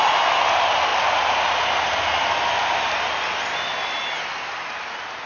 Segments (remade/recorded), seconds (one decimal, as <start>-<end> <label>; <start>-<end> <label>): 0.0-5.3 recorded